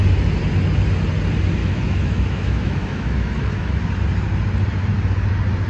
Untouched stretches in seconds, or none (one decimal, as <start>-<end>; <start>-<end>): 0.0-1.6; 3.8-5.7

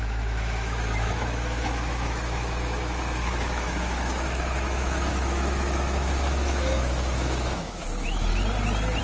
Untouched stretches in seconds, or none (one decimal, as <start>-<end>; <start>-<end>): 8.3-9.0

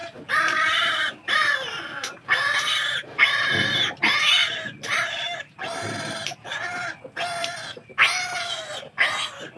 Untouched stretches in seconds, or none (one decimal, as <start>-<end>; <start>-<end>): 4.0-4.4; 6.5-9.6

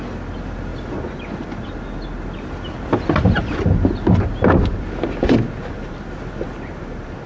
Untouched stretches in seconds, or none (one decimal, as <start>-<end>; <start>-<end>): 0.0-7.3

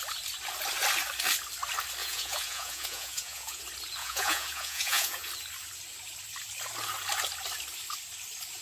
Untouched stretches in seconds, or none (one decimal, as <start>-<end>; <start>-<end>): 0.0-2.0; 3.6-4.0; 5.3-8.6